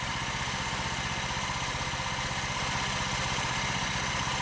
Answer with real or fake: real